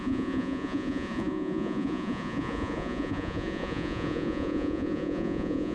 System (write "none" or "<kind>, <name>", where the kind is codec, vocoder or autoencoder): vocoder, Vocos